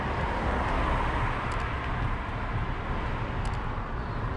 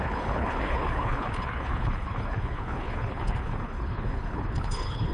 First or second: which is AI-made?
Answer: second